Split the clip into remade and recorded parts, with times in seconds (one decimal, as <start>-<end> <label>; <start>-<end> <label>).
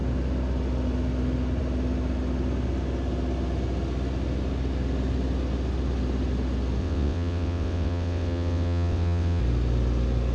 0.0-6.8 recorded; 6.8-9.4 remade; 9.4-10.3 recorded